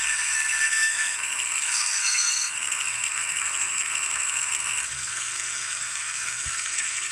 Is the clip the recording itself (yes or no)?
no